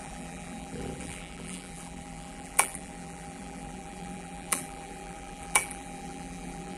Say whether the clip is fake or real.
fake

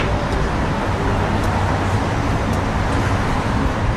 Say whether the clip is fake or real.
real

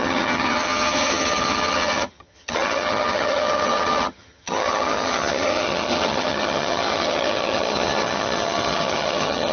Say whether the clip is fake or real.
fake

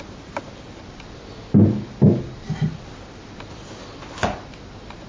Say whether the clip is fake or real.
real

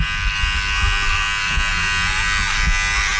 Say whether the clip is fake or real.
real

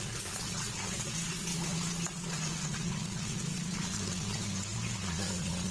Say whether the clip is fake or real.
fake